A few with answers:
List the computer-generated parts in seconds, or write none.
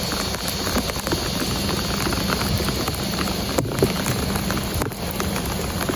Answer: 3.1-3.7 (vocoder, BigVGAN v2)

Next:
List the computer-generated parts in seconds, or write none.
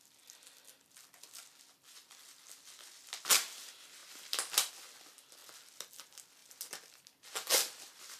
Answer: none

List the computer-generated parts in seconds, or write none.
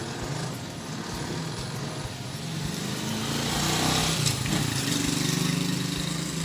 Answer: none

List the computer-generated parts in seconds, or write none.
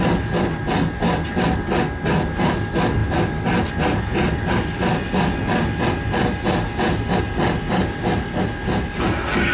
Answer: none